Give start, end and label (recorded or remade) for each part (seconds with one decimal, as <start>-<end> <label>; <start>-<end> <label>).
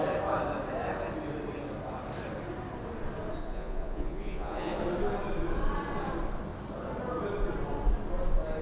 0.0-3.4 recorded; 3.4-4.8 remade; 4.8-8.6 recorded